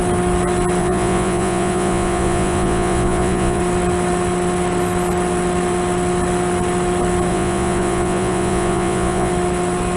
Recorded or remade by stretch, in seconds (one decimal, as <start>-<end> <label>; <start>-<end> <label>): 0.0-0.8 recorded; 0.8-3.6 remade; 3.6-7.3 recorded; 7.3-9.3 remade; 9.3-10.0 recorded